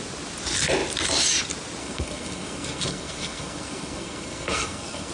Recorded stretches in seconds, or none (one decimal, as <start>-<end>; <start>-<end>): 0.0-1.8